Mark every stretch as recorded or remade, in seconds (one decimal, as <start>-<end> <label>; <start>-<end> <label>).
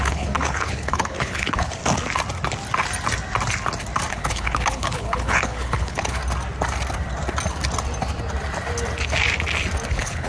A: 0.0-1.8 remade; 1.8-4.1 recorded; 4.1-6.2 remade; 6.2-9.9 recorded; 9.9-10.3 remade